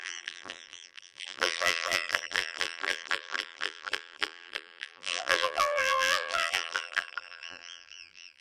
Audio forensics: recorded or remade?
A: remade